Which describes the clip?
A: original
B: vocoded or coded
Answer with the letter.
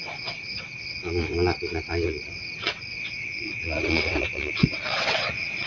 B